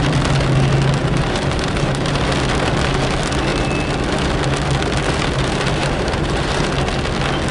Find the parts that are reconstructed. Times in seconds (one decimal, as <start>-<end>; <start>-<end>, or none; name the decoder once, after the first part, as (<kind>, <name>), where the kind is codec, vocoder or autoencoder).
1.0-2.2 (vocoder, BigVGAN v2); 5.8-6.7